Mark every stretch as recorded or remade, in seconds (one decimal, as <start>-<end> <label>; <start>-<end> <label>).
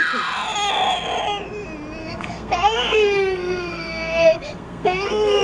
0.0-2.0 recorded; 2.0-5.4 remade